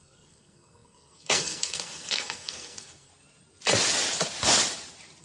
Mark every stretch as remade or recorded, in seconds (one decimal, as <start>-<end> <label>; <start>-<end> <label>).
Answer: 0.0-3.1 remade; 3.1-5.2 recorded